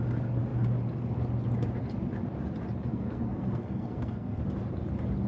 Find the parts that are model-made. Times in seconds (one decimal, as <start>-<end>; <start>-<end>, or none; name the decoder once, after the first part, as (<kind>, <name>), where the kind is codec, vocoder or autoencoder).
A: 2.9-4.4 (codec, SNAC)